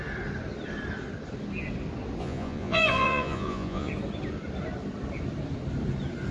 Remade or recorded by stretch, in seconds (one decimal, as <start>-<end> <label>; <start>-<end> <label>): 0.0-2.2 recorded; 2.2-3.9 remade; 3.9-6.3 recorded